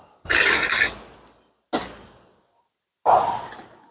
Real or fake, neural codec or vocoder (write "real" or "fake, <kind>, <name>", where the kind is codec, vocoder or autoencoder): real